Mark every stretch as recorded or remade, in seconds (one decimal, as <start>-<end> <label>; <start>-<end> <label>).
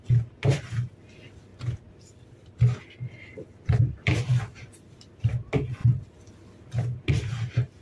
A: 0.0-7.8 recorded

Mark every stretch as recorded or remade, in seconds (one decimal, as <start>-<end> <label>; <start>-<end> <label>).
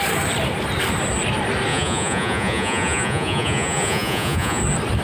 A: 0.0-1.7 recorded; 1.7-4.6 remade; 4.6-5.0 recorded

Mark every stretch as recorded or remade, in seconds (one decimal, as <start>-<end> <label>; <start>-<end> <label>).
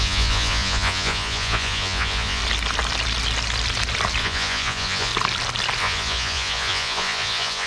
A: 0.0-2.4 remade; 2.4-4.2 recorded; 4.2-5.1 remade; 5.1-5.8 recorded; 5.8-7.7 remade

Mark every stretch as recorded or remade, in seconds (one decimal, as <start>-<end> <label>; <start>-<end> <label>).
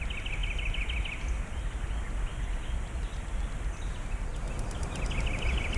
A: 0.0-5.8 recorded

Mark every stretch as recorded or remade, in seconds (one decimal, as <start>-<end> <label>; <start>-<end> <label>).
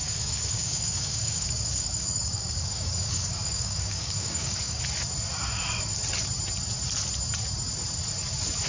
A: 0.0-4.8 remade; 4.8-8.7 recorded